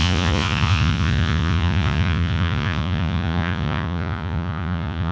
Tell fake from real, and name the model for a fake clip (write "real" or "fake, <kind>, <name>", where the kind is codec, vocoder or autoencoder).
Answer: fake, vocoder, Vocos